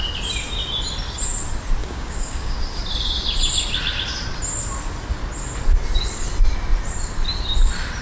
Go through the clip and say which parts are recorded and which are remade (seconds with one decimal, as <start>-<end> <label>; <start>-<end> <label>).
0.0-1.8 recorded; 1.8-2.6 remade; 2.6-8.0 recorded